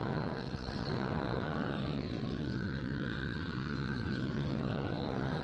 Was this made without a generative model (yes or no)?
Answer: no